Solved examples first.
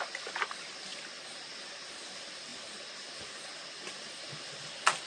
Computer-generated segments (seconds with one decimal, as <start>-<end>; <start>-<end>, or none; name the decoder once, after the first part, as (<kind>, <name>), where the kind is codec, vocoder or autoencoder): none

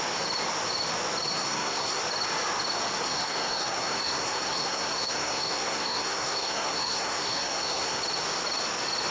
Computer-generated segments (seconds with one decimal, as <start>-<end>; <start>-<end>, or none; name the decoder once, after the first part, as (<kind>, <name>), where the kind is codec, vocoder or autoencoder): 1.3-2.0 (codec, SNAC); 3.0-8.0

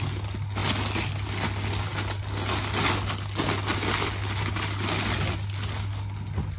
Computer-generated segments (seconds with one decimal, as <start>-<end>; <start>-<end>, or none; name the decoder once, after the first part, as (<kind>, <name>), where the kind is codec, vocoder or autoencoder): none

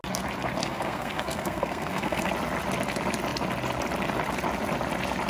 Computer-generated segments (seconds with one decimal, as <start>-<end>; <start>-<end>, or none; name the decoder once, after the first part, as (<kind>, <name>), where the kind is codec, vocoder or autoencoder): 0.6-2.3 (codec, SNAC)